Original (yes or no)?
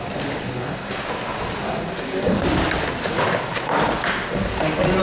yes